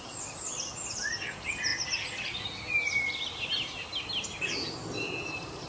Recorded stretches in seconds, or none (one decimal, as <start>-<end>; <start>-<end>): 0.0-5.7